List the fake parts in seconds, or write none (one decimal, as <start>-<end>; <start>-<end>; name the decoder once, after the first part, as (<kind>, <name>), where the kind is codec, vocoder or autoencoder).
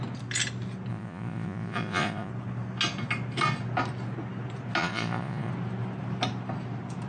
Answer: 0.9-2.3 (vocoder, Vocos); 4.8-5.5